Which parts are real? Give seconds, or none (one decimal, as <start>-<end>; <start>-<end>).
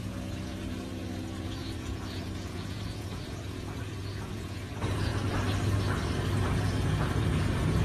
5.1-6.4